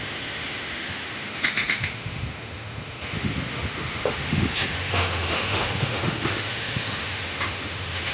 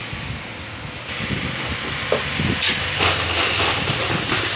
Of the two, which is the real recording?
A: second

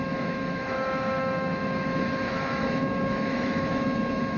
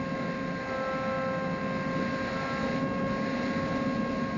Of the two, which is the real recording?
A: second